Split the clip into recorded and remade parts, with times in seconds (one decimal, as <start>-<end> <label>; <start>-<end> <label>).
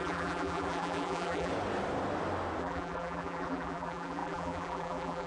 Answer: 0.0-1.5 remade; 1.5-2.6 recorded; 2.6-5.3 remade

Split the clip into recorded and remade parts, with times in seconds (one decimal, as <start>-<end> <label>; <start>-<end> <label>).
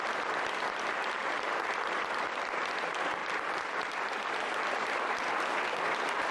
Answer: 0.0-1.2 recorded; 1.2-2.7 remade; 2.7-3.2 recorded; 3.2-5.3 remade; 5.3-6.3 recorded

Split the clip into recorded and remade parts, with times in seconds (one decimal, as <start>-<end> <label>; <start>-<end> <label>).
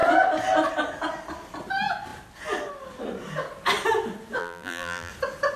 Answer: 0.0-4.4 recorded; 4.4-5.1 remade; 5.1-5.6 recorded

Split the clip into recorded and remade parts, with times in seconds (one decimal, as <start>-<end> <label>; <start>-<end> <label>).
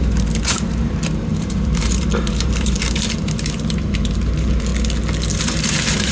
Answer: 0.0-4.7 remade; 4.7-5.3 recorded; 5.3-6.1 remade